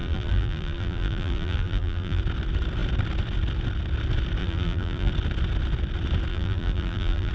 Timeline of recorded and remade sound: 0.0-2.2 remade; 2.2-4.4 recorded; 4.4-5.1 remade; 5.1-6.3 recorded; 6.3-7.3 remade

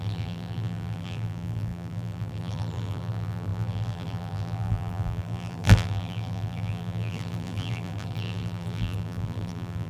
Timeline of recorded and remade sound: 0.0-9.9 remade

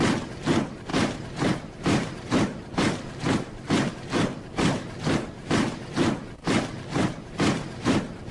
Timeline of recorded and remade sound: 0.0-8.3 recorded

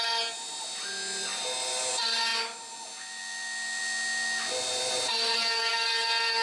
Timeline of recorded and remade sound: 0.0-1.3 recorded; 1.3-1.8 remade; 1.8-4.7 recorded; 4.7-5.7 remade; 5.7-6.4 recorded